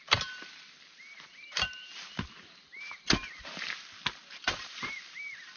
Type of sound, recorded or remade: remade